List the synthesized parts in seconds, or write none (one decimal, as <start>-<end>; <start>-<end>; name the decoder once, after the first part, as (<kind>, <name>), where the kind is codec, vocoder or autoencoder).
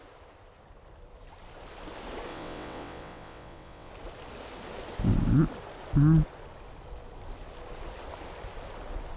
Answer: 2.3-3.9 (vocoder, WaveNeXt)